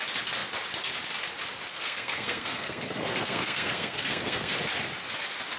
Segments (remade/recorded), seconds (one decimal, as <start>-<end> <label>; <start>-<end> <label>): 0.0-1.7 recorded; 1.7-4.5 remade; 4.5-5.6 recorded